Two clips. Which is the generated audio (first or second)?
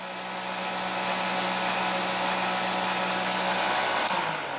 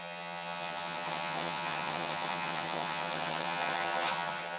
second